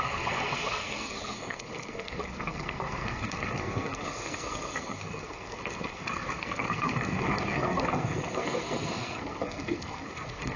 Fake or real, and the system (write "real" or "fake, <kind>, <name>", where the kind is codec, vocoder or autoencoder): fake, codec, SNAC